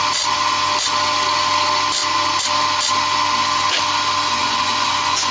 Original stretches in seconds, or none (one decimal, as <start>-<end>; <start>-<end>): 0.0-4.4